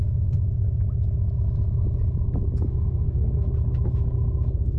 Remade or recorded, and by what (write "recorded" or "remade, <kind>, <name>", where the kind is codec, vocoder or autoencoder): remade, autoencoder, DAC-VAE